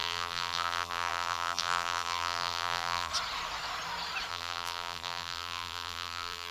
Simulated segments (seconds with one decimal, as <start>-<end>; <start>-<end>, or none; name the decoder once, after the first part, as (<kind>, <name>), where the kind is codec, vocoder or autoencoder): 0.0-3.1 (vocoder, BigVGAN v2); 4.3-6.5